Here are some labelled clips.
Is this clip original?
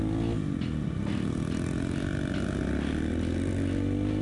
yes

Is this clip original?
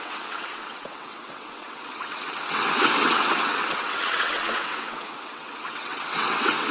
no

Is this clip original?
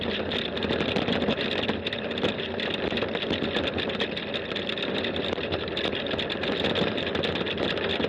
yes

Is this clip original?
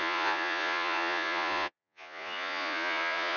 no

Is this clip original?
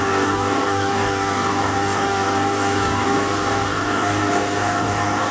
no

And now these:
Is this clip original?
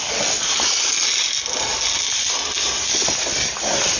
yes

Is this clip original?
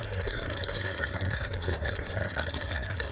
no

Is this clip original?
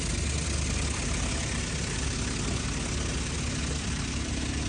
yes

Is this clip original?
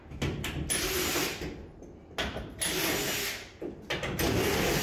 yes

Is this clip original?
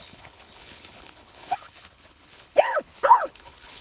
no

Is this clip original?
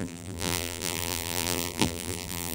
no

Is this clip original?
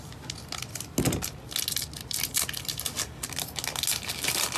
yes